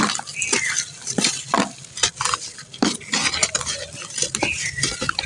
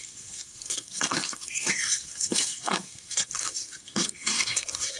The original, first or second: first